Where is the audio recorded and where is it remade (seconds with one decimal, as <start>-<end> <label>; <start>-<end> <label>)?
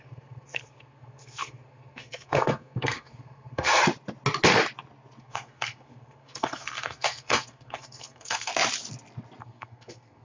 0.0-3.8 remade; 3.8-5.2 recorded; 5.2-8.5 remade; 8.5-9.4 recorded; 9.4-10.2 remade